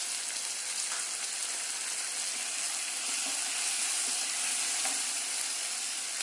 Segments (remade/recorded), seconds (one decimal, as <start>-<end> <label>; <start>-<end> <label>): 0.0-6.2 recorded